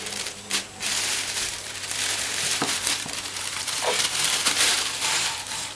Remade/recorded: remade